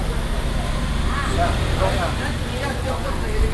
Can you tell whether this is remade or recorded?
recorded